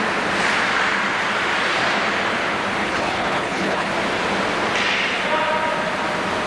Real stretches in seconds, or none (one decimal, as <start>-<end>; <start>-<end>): 0.0-2.8; 3.9-6.5